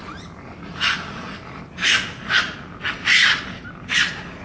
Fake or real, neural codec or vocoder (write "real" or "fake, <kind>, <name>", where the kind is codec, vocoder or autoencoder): real